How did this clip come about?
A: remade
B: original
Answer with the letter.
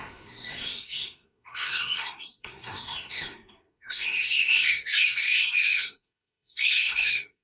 A